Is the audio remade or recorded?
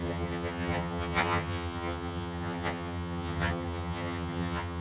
remade